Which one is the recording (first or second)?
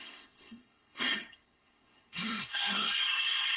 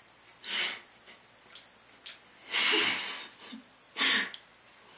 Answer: second